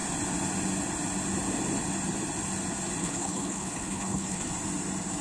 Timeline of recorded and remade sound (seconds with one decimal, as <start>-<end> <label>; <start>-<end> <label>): 0.0-3.0 recorded; 3.0-4.5 remade; 4.5-5.2 recorded